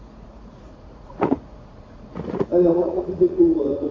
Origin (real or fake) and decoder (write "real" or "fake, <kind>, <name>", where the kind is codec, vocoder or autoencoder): fake, vocoder, Vocos